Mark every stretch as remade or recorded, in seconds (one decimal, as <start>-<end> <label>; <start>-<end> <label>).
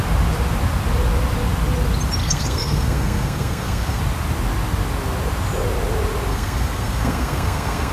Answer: 0.0-2.2 recorded; 2.2-4.0 remade; 4.0-6.3 recorded; 6.3-7.9 remade